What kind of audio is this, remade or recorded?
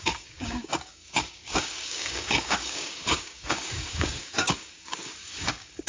remade